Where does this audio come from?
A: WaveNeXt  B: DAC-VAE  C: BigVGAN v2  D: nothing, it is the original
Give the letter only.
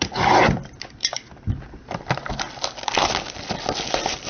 C